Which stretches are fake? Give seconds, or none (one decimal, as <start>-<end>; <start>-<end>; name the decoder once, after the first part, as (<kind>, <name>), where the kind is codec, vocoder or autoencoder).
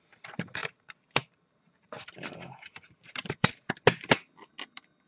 0.6-3.5 (vocoder, BigVGAN v2)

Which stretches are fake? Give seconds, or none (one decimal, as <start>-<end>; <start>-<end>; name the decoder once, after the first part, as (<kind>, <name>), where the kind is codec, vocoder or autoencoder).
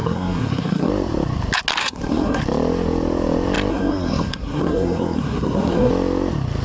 0.0-0.9 (codec, SNAC); 1.8-2.4; 3.7-5.9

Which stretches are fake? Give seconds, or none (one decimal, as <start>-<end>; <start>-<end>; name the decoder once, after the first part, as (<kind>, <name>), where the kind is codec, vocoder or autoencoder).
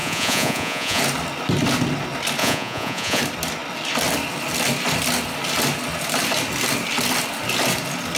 0.0-1.0 (vocoder, Vocos); 2.4-3.2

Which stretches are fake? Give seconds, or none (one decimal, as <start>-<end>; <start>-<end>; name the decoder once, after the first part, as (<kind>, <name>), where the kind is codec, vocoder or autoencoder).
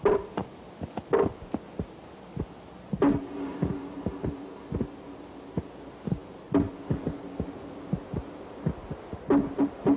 none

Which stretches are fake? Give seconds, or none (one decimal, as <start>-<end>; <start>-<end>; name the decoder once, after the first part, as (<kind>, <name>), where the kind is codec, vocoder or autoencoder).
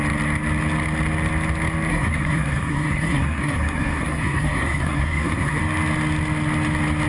1.9-5.6 (codec, SNAC)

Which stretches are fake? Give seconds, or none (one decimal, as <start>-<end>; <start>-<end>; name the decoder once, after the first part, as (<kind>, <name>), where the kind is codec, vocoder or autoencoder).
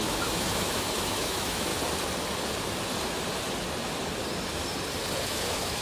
0.0-1.7 (autoencoder, DAC-VAE); 5.2-5.8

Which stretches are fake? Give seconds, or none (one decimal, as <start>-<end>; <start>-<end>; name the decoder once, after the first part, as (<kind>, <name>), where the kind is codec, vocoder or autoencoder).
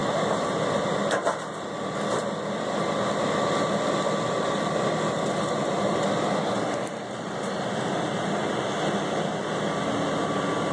none